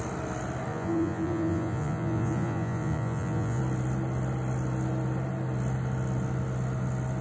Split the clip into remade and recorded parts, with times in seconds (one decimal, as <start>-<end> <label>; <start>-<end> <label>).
0.0-0.7 recorded; 0.7-3.6 remade; 3.6-7.2 recorded